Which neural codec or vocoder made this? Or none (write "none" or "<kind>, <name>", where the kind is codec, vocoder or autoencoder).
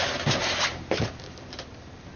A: none